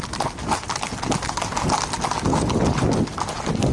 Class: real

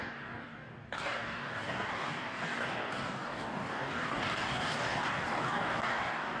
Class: fake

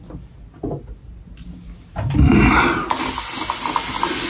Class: real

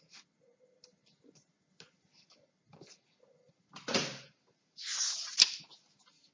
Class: real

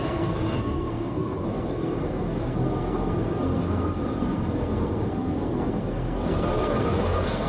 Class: fake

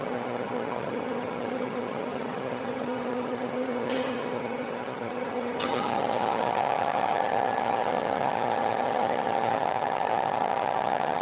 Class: fake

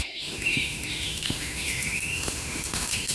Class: fake